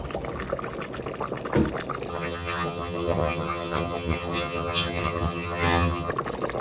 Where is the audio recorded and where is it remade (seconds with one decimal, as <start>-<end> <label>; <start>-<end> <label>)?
0.0-2.1 recorded; 2.1-6.1 remade; 6.1-6.6 recorded